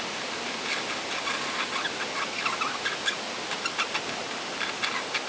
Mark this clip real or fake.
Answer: real